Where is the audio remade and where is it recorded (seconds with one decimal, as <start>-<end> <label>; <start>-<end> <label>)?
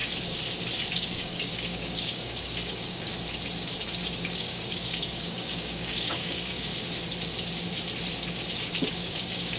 0.0-0.9 recorded; 0.9-3.1 remade; 3.1-4.2 recorded; 4.2-6.7 remade; 6.7-8.9 recorded; 8.9-9.6 remade